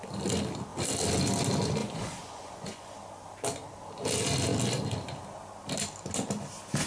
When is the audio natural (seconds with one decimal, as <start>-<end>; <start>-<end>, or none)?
0.0-1.8; 2.9-6.9